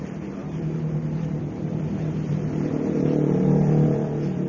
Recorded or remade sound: remade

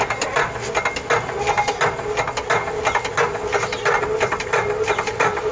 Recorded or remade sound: recorded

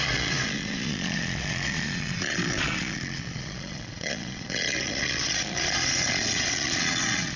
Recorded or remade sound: remade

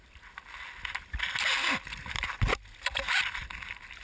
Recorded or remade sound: recorded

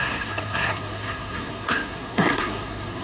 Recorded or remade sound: remade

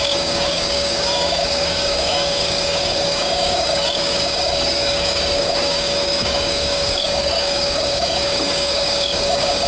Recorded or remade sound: remade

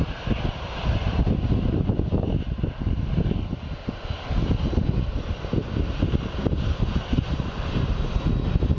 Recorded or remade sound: recorded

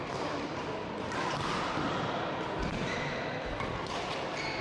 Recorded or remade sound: remade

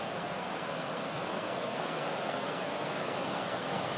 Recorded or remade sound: remade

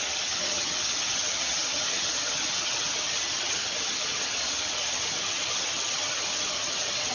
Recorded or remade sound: remade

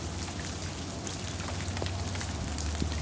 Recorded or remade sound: recorded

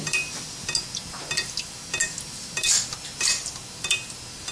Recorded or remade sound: recorded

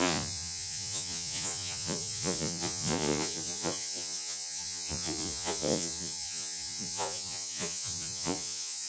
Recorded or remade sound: remade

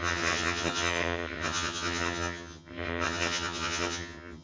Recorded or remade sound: remade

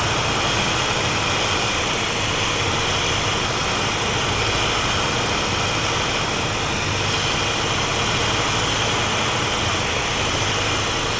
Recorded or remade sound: recorded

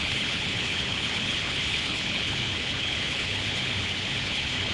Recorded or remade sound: remade